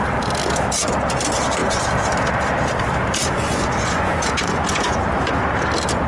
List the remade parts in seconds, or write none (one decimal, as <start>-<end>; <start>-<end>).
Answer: 3.2-5.0

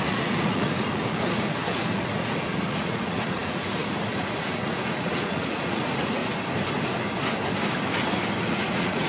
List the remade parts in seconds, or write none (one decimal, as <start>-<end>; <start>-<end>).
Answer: 0.0-6.2; 8.4-9.1